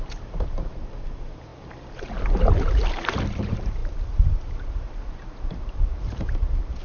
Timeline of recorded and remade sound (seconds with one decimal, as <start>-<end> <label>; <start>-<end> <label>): 0.0-6.8 remade